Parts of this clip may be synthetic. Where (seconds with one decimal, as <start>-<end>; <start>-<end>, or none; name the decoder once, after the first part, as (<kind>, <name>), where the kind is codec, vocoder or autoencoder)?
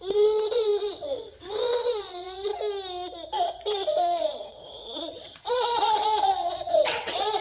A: 0.0-2.5 (vocoder, WaveNeXt); 3.4-7.4